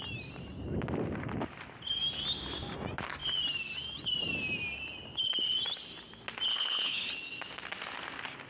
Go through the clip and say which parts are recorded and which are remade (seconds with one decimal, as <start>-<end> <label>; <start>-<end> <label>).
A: 0.0-6.5 recorded; 6.5-7.1 remade; 7.1-8.5 recorded